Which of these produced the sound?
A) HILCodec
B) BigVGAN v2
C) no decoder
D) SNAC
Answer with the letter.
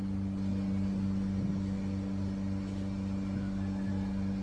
C